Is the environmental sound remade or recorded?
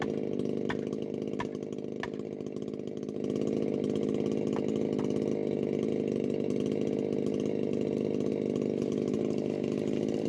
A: recorded